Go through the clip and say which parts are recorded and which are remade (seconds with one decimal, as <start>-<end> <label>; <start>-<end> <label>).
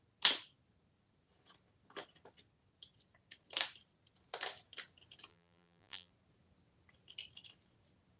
0.0-5.3 recorded; 5.3-6.1 remade; 6.1-8.2 recorded